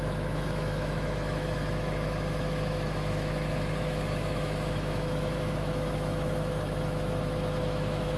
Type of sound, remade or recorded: remade